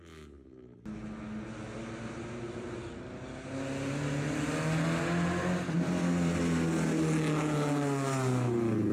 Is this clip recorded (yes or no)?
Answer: yes